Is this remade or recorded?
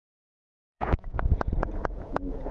remade